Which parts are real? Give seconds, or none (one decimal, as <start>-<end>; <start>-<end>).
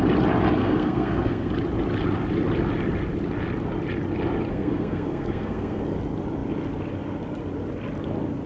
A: 0.0-0.6; 1.5-4.5; 5.8-8.5